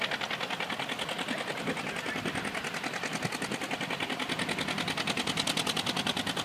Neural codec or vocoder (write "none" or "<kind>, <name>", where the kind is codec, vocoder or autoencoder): none